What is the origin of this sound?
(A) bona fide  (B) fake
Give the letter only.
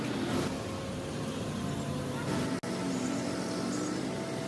A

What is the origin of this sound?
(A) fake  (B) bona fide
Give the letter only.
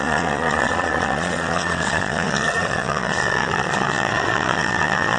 A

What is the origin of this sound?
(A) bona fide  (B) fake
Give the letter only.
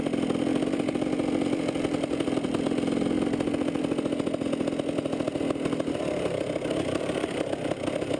A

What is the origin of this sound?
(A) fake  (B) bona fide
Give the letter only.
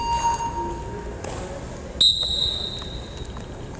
B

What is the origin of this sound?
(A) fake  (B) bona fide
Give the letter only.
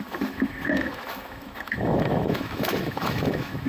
A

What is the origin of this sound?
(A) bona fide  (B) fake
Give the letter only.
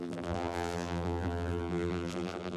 B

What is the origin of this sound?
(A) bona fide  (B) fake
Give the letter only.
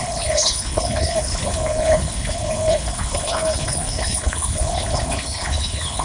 B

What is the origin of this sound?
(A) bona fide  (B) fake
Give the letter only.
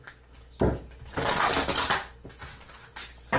A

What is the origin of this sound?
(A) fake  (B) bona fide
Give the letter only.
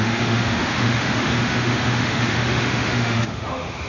A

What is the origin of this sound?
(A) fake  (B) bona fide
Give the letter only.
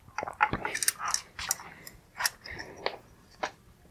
B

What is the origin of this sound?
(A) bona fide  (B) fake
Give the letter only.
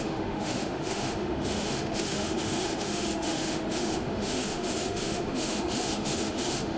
B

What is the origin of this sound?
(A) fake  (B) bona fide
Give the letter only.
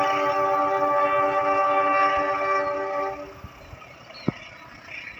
B